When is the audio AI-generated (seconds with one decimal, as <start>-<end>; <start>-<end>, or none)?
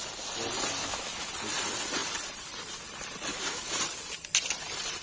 0.8-1.3; 3.3-3.8